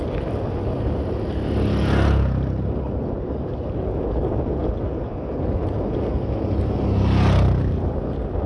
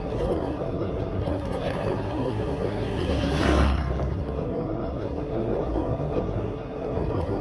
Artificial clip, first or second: second